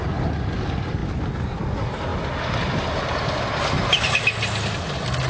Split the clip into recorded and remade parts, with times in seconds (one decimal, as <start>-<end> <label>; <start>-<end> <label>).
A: 0.0-5.3 recorded